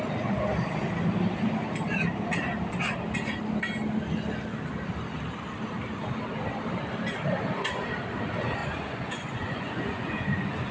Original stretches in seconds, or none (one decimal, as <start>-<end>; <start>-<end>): 0.0-8.6